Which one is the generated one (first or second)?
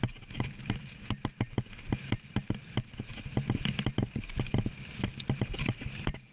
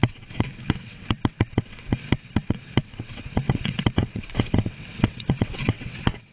second